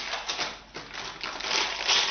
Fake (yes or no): no